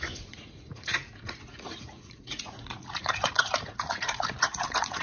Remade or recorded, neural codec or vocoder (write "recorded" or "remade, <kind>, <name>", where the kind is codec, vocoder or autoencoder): remade, vocoder, Vocos